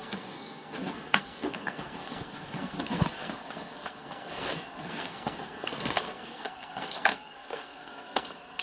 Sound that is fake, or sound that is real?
fake